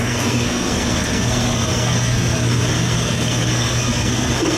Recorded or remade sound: remade